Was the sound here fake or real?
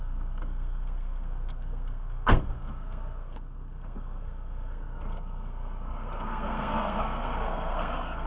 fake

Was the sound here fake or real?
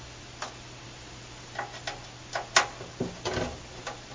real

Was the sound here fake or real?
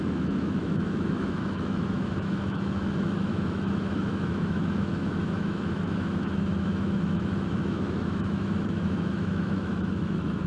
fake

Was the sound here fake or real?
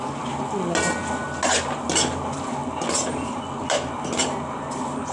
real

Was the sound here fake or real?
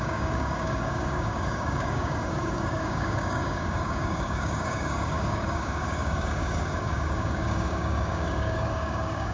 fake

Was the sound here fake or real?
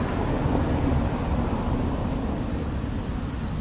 real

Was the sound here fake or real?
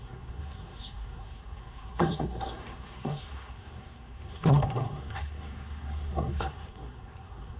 fake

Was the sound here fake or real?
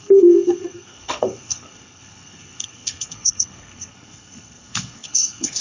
fake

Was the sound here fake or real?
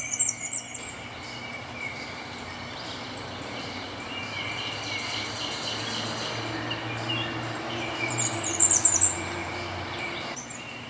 real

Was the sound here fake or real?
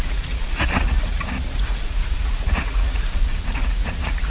fake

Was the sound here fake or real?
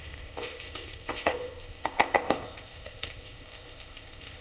fake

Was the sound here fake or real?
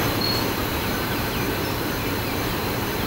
fake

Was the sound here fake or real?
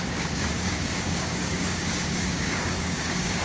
fake